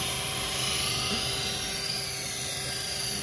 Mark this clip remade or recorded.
recorded